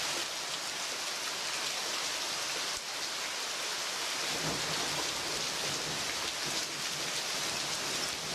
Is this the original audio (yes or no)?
yes